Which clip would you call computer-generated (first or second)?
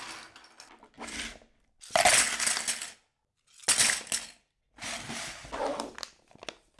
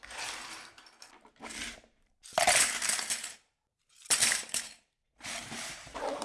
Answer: second